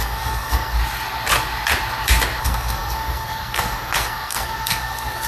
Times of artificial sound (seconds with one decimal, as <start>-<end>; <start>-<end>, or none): 0.0-0.8; 2.4-5.3